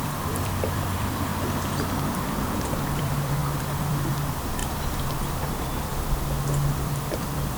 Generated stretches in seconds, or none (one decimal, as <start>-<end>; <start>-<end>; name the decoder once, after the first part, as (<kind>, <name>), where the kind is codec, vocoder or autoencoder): 0.0-1.3 (vocoder, BigVGAN v2); 2.6-4.6; 5.3-5.9; 6.7-7.6